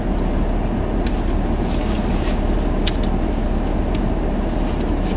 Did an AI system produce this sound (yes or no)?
no